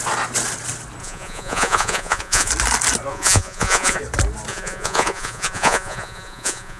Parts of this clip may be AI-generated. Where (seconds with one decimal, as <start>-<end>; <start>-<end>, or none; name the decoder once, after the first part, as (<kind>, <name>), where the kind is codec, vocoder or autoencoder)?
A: 1.0-2.5 (vocoder, Vocos); 3.1-4.0; 4.5-6.8